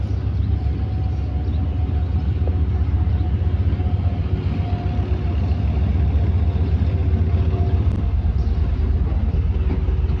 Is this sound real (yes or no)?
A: yes